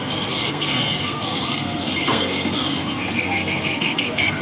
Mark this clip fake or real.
fake